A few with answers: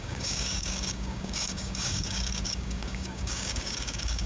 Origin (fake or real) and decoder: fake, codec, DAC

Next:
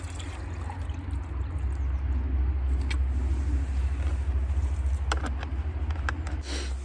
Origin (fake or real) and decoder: real